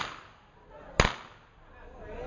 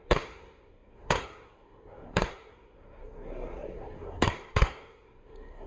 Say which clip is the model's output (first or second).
second